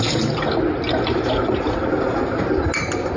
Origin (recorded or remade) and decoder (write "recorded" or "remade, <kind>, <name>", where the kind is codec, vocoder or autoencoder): recorded